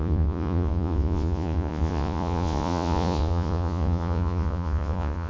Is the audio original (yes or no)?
no